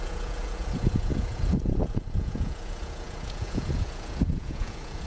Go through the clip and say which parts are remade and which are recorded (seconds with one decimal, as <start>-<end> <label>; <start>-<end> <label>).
0.0-5.1 remade